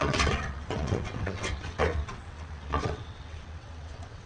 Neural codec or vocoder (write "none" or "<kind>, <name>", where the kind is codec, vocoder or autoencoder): vocoder, WaveNeXt